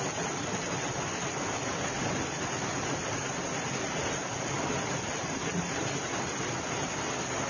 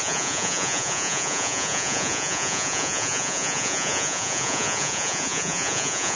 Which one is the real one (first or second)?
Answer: first